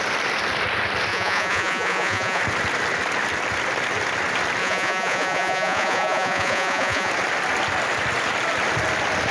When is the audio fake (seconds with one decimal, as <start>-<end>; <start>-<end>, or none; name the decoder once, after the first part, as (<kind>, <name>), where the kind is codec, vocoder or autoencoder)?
1.1-2.4 (vocoder, Vocos); 4.6-7.1